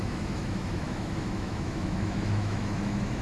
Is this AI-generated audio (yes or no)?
yes